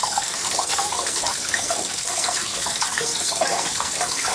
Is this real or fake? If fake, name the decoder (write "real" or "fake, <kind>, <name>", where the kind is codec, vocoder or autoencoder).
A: fake, codec, SNAC